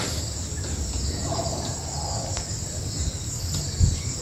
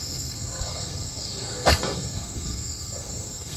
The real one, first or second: first